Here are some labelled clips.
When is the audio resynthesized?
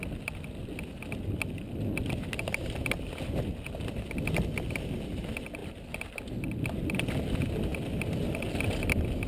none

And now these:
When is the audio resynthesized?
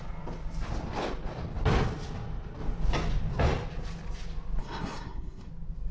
4.6-5.5 (codec, SNAC)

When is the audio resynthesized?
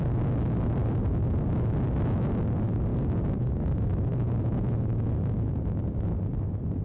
3.9-5.1 (autoencoder, DAC-VAE)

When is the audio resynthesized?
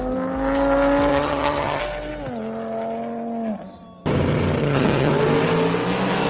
1.1-1.8 (vocoder, HiFi-GAN); 4.6-5.1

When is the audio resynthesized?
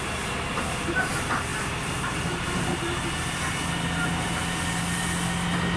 none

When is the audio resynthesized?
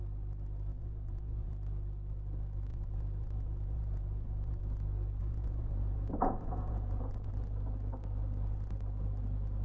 0.7-1.5 (vocoder, Vocos); 2.7-4.6; 5.2-7.3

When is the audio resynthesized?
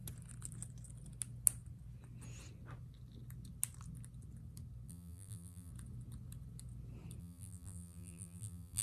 4.9-5.7 (vocoder, BigVGAN v2); 7.2-8.8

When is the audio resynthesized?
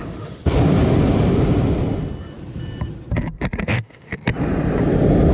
0.0-0.4 (autoencoder, DAC-VAE); 3.6-4.1